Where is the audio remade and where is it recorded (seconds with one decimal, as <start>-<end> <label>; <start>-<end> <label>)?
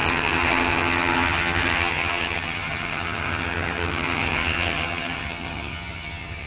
0.0-6.5 remade